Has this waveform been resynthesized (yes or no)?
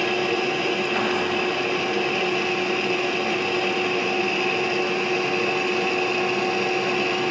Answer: no